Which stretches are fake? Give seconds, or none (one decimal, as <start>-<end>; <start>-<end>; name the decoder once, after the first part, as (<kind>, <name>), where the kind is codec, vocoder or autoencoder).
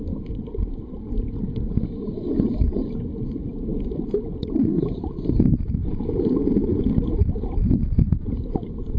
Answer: 3.7-4.8 (vocoder, BigVGAN v2)